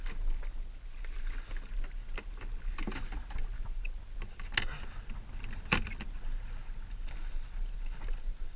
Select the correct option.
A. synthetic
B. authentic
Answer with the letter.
B